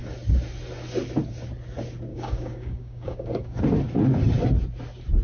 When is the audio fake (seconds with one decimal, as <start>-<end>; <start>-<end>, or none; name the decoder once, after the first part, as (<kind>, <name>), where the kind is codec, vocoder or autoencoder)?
2.1-3.6 (codec, DAC)